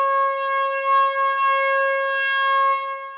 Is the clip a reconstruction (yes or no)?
no